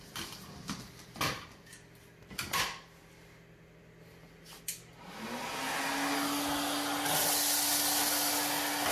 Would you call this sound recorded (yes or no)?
yes